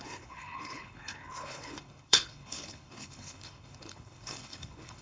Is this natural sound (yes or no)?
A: no